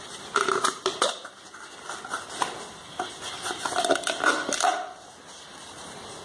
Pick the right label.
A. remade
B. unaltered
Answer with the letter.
B